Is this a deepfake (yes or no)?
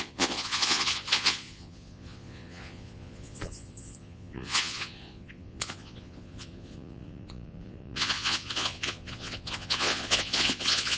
yes